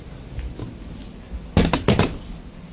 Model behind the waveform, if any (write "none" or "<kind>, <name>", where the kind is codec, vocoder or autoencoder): none